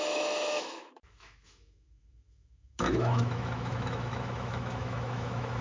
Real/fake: fake